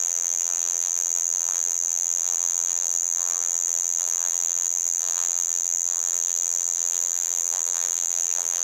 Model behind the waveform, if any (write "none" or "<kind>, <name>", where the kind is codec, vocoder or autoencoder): vocoder, BigVGAN v2